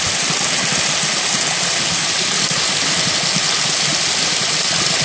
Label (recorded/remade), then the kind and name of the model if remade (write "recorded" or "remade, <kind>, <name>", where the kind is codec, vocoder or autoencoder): recorded